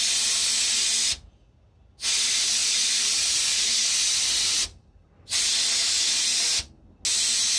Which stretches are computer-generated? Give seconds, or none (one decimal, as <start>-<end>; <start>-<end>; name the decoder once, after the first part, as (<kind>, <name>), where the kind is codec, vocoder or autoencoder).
none